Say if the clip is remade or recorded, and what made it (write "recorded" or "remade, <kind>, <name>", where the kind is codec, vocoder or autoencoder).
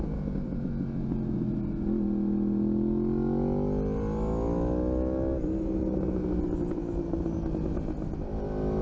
recorded